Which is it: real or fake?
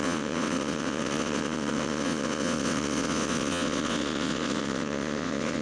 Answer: fake